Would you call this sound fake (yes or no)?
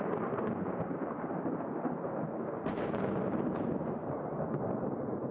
yes